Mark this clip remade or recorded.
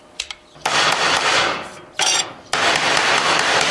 recorded